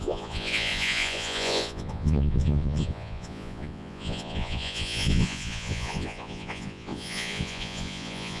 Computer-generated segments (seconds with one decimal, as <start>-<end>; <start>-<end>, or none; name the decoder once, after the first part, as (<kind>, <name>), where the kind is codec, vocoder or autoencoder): 0.0-8.4 (vocoder, Vocos)